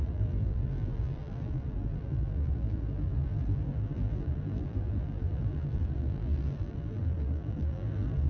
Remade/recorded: remade